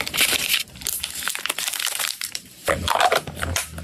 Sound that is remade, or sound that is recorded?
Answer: remade